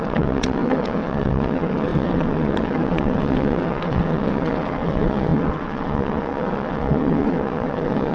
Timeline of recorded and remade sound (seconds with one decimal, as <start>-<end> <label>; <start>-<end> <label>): 0.0-8.1 remade